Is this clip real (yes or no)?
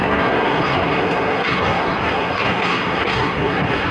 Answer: no